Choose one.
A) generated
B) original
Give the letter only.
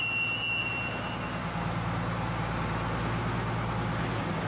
B